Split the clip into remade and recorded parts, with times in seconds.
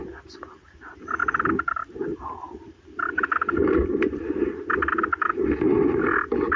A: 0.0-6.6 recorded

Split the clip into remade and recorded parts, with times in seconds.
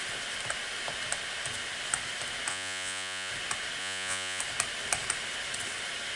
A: 0.0-2.5 recorded; 2.5-3.3 remade; 3.3-3.8 recorded; 3.8-4.4 remade; 4.4-6.2 recorded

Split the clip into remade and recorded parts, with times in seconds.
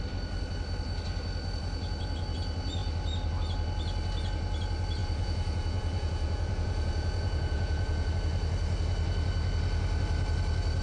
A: 0.0-5.0 recorded; 5.0-8.1 remade; 8.1-10.8 recorded